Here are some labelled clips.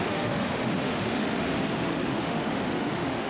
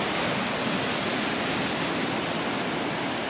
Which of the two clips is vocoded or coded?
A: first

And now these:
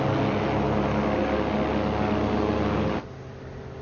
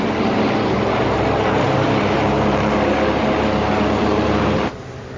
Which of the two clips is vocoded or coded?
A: second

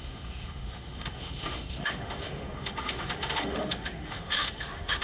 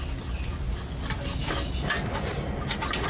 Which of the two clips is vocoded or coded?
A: first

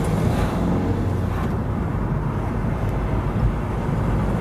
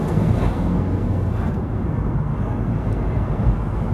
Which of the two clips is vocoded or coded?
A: second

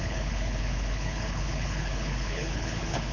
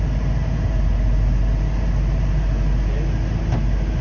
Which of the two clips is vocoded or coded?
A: first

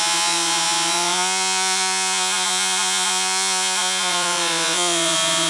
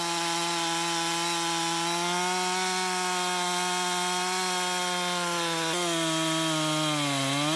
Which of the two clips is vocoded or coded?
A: first